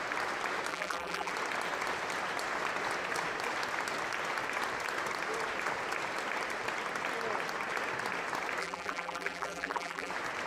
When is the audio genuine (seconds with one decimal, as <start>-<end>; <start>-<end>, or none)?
0.0-0.7; 1.3-8.6; 10.1-10.5